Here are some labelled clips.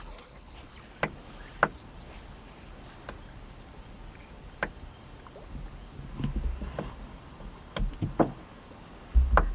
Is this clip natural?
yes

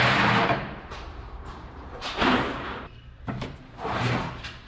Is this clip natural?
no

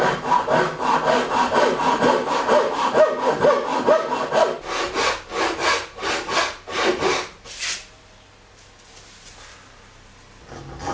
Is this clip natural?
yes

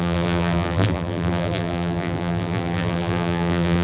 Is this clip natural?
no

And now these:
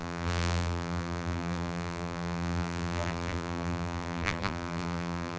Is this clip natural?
no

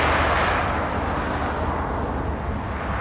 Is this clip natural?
yes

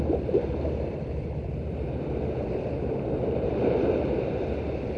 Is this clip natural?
no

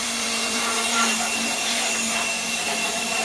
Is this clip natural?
no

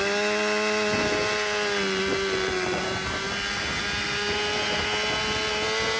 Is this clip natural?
yes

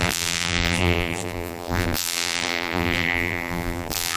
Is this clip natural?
no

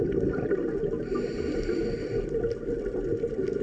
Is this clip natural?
yes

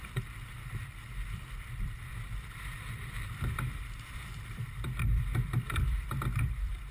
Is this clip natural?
no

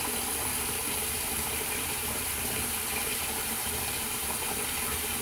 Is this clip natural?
no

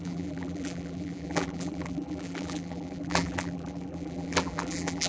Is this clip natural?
no